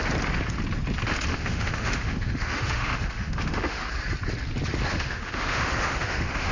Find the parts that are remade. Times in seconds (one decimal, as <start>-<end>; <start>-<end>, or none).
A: 1.3-3.8; 4.9-6.5